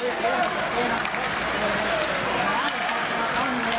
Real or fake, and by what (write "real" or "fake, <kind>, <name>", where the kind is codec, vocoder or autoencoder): real